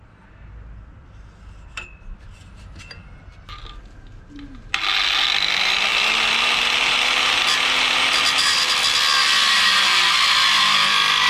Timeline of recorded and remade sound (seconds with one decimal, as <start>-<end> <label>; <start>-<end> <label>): 0.0-11.3 recorded